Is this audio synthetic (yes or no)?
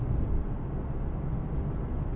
no